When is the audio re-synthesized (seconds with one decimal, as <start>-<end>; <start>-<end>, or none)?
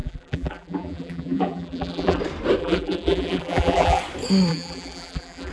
0.0-2.2; 2.6-4.0; 4.5-5.5